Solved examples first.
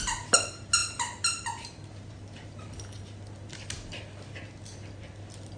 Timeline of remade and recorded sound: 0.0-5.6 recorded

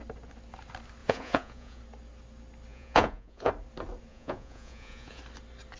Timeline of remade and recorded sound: 0.0-1.0 recorded; 1.0-1.8 remade; 1.8-2.7 recorded; 2.7-3.5 remade; 3.5-4.1 recorded; 4.1-5.2 remade; 5.2-5.8 recorded

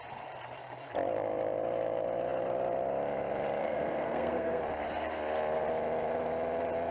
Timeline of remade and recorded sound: 0.0-3.6 recorded; 3.6-4.6 remade; 4.6-6.9 recorded

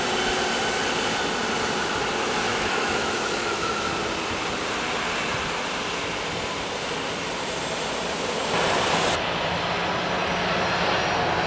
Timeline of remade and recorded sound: 0.0-2.5 recorded; 2.5-3.8 remade; 3.8-11.5 recorded

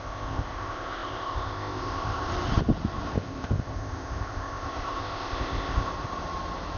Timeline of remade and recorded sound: 0.0-2.3 remade; 2.3-3.1 recorded; 3.1-5.9 remade; 5.9-6.8 recorded

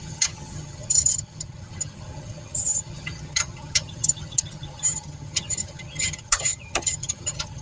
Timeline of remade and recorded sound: 0.0-7.6 remade